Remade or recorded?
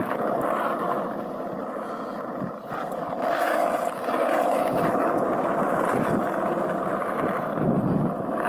recorded